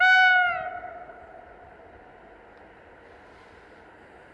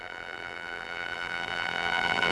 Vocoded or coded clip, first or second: second